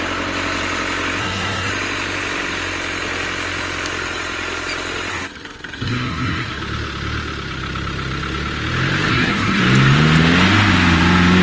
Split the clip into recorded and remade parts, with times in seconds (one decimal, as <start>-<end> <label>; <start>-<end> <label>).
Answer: 0.0-1.2 recorded; 1.2-1.7 remade; 1.7-5.1 recorded; 5.1-6.6 remade; 6.6-9.1 recorded; 9.1-9.6 remade; 9.6-11.4 recorded